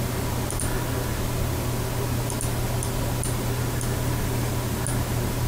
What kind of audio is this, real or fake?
real